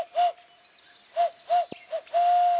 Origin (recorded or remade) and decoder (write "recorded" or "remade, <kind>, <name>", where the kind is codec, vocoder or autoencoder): recorded